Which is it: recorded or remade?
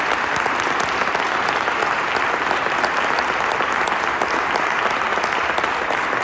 recorded